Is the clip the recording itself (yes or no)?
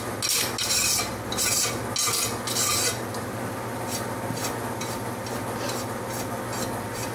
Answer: yes